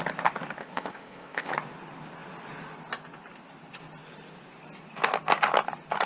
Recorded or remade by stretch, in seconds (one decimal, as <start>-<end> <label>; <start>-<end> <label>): 0.0-0.6 recorded; 0.6-1.5 remade; 1.5-6.1 recorded